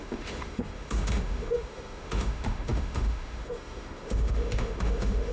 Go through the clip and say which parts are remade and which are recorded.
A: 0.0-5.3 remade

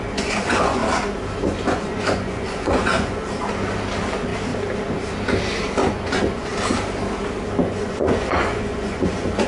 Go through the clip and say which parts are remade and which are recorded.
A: 0.0-0.8 remade; 0.8-1.4 recorded; 1.4-3.2 remade; 3.2-5.9 recorded; 5.9-6.5 remade; 6.5-7.6 recorded; 7.6-9.5 remade

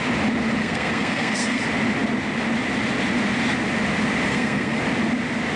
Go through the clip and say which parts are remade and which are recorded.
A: 0.0-0.6 recorded; 0.6-1.6 remade; 1.6-4.3 recorded; 4.3-4.8 remade; 4.8-5.6 recorded

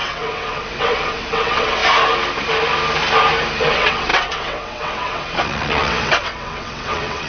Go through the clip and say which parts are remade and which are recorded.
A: 0.0-1.8 remade; 1.8-3.6 recorded; 3.6-7.3 remade

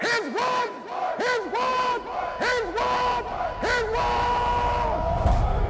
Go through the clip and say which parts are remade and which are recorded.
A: 0.0-5.7 recorded

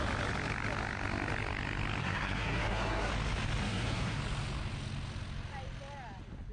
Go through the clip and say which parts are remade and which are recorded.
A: 0.0-2.0 recorded; 2.0-3.1 remade; 3.1-3.6 recorded; 3.6-4.2 remade; 4.2-6.5 recorded